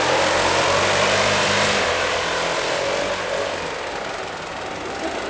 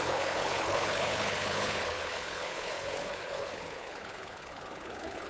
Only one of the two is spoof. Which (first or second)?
second